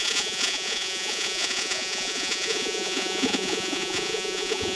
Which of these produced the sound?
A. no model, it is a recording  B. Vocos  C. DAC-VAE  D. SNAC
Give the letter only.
B